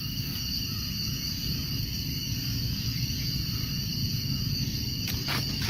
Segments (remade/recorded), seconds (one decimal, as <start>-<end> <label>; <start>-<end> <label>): 0.0-5.7 remade

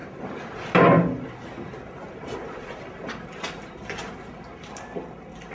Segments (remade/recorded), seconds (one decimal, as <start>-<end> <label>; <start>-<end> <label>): 0.0-5.5 recorded

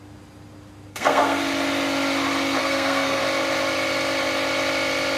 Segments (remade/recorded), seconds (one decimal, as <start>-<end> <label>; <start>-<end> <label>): 0.0-0.9 recorded; 0.9-1.4 remade; 1.4-2.6 recorded; 2.6-3.2 remade; 3.2-5.2 recorded

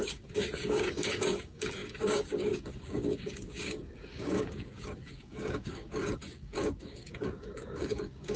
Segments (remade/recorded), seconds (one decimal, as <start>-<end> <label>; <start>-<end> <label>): 0.0-8.4 remade

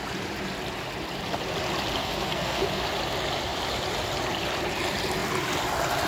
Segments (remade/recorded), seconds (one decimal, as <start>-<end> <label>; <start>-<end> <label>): 0.0-2.0 recorded; 2.0-2.8 remade; 2.8-6.1 recorded

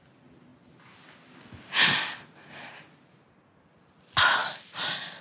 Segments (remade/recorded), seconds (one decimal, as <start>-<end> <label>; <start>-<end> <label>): 0.0-5.2 recorded